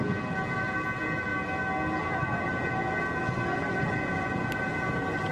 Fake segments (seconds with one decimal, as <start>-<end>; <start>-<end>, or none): none